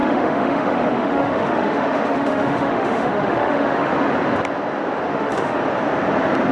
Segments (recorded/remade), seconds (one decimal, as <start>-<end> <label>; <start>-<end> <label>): 0.0-3.9 remade; 3.9-5.1 recorded; 5.1-5.6 remade; 5.6-6.5 recorded